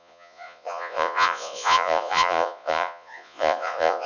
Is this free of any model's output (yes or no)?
no